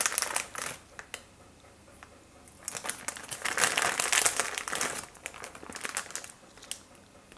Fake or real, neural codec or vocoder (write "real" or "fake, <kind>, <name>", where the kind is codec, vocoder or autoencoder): real